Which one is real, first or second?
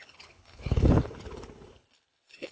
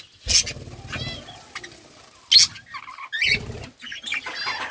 second